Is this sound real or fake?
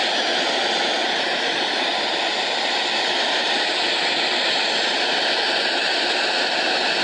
real